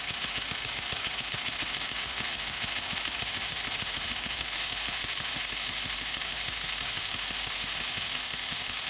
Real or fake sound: fake